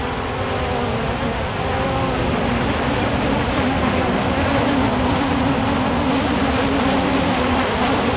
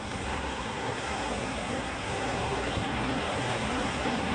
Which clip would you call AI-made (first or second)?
second